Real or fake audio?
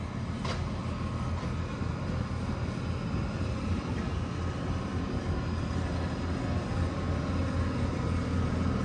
real